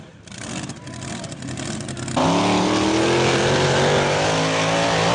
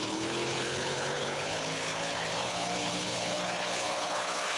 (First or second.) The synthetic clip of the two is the second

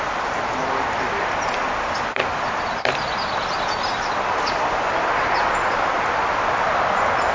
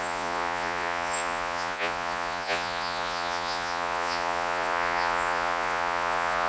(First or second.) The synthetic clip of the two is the second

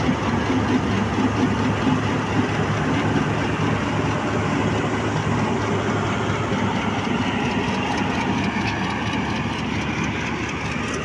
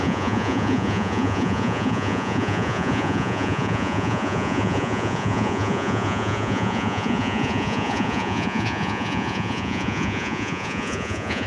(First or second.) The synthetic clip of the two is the second